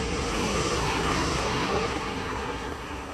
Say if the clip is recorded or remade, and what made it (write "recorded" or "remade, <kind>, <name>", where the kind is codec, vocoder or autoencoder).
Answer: remade, codec, SNAC